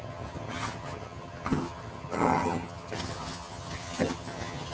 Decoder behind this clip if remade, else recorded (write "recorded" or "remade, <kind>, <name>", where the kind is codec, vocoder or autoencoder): remade, vocoder, HiFi-GAN